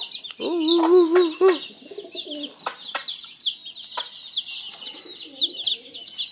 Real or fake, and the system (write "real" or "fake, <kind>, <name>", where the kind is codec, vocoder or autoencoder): real